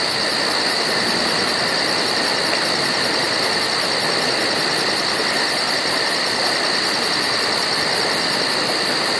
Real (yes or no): yes